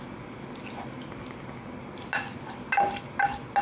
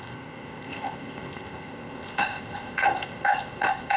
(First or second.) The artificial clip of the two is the second